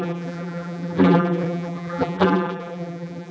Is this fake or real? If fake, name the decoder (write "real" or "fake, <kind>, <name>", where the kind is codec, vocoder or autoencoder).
fake, vocoder, BigVGAN v2